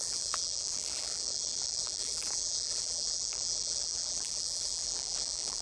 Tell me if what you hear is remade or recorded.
remade